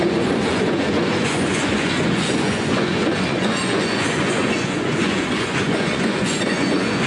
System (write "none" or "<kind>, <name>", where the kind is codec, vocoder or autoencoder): vocoder, Vocos